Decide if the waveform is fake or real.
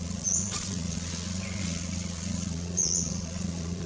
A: fake